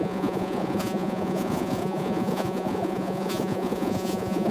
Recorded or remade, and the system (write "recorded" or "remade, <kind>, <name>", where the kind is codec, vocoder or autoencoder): remade, vocoder, Vocos